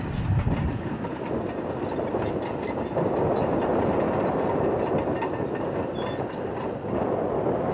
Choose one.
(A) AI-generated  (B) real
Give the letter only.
B